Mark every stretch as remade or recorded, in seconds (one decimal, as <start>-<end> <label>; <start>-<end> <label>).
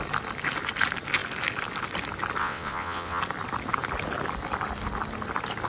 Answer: 0.0-2.4 recorded; 2.4-3.2 remade; 3.2-5.7 recorded